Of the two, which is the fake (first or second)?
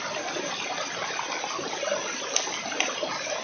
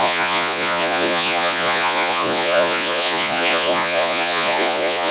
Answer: second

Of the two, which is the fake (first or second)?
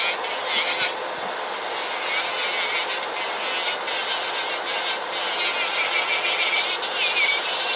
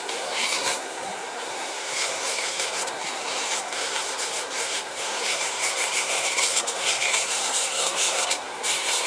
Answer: second